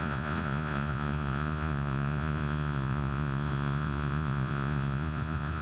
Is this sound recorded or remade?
remade